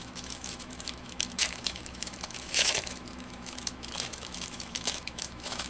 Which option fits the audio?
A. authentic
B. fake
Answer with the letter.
B